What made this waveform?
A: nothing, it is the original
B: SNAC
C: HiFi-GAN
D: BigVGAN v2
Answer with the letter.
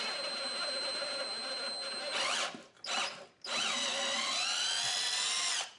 A